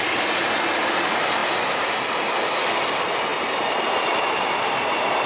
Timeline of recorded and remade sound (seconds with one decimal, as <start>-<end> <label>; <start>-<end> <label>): 0.0-5.3 recorded